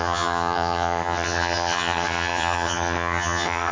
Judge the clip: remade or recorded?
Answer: remade